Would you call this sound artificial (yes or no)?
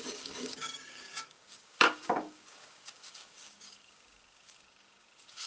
yes